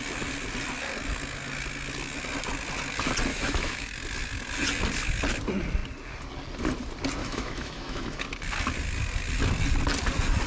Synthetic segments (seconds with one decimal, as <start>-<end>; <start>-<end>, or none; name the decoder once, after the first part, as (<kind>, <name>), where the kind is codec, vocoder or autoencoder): 3.3-3.9 (autoencoder, DAC-VAE); 7.2-8.2